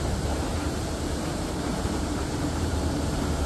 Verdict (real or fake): fake